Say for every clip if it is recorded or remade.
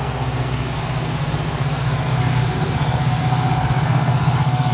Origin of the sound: remade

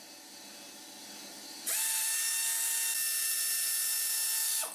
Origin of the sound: recorded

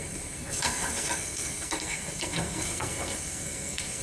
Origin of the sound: remade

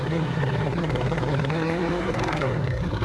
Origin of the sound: remade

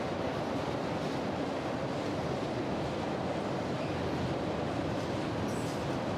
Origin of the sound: recorded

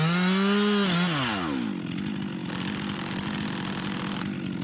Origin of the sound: recorded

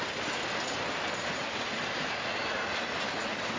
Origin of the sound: recorded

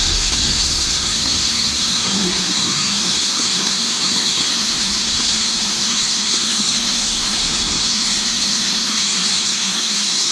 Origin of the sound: remade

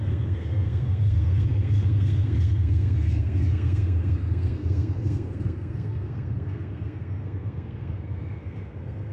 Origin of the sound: remade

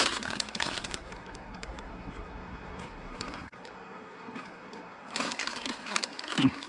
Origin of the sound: remade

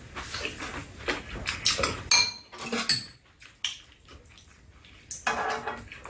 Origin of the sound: recorded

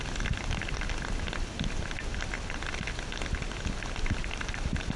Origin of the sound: recorded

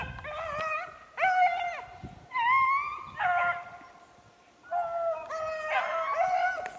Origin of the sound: recorded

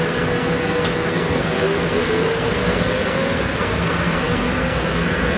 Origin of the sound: remade